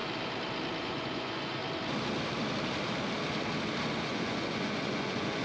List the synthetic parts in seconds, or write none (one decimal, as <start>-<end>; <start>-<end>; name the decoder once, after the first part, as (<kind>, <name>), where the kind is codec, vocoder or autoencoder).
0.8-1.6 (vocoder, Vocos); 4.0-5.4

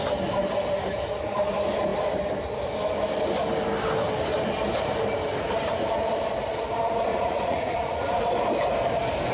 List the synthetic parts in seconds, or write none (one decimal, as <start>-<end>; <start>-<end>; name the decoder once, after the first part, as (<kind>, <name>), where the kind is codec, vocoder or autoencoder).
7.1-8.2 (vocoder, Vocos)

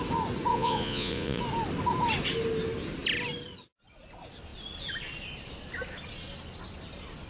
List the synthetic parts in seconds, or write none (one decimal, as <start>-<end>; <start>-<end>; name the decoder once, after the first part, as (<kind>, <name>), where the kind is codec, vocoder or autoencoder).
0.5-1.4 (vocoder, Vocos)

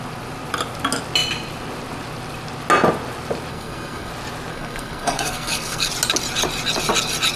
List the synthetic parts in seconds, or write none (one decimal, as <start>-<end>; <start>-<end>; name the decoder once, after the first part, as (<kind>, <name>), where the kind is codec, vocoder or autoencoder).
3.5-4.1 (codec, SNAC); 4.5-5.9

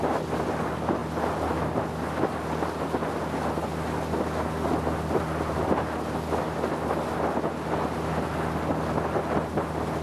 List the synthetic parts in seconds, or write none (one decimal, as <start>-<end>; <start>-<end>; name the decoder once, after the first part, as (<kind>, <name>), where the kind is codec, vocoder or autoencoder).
none

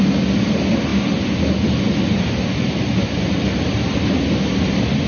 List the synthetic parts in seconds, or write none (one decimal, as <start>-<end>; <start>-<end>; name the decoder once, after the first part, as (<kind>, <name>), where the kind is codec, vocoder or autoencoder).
none

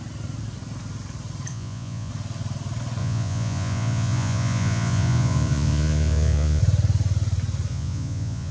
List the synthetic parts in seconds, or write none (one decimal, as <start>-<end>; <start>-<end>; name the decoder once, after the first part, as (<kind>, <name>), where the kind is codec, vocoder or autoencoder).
1.5-2.1 (vocoder, Vocos); 3.0-6.6; 7.7-8.5

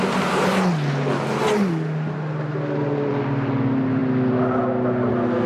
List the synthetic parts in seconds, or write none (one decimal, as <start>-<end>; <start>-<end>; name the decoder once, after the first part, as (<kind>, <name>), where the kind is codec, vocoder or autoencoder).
none